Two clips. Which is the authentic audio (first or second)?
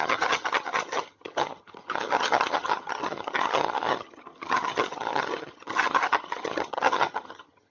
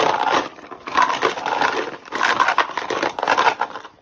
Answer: second